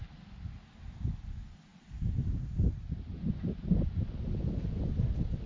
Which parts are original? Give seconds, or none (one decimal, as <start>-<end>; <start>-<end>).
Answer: 0.0-5.5